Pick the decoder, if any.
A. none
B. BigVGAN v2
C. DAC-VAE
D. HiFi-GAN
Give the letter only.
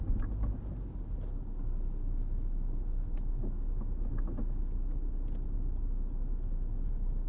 A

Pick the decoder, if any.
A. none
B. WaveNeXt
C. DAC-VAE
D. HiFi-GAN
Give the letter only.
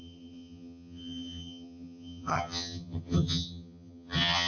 D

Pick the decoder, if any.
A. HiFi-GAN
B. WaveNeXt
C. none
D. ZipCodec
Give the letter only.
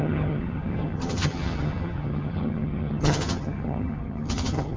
A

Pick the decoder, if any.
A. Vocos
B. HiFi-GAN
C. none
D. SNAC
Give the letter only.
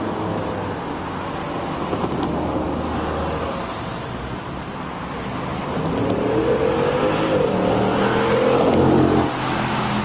C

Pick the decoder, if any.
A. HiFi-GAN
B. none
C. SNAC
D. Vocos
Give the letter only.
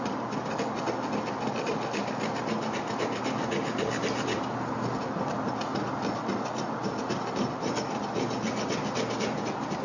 B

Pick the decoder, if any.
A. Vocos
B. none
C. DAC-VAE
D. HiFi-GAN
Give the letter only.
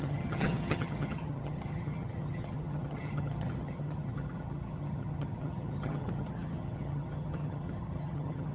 D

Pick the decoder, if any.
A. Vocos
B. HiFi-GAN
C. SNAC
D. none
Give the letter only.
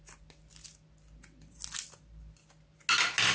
D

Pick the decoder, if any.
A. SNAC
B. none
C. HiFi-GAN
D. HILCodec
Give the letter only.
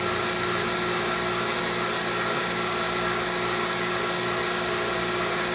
B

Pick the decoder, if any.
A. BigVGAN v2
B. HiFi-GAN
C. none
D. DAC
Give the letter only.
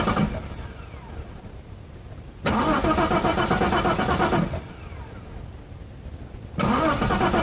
C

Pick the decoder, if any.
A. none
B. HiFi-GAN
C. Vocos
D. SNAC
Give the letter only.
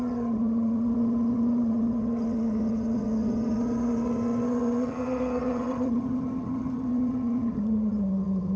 B